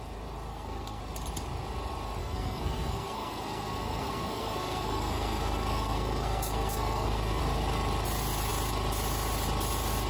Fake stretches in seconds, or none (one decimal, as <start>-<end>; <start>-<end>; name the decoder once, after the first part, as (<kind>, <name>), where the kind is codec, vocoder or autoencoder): 0.5-1.0 (codec, SNAC); 2.2-7.4